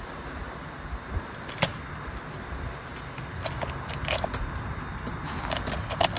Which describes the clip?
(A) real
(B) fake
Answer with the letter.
A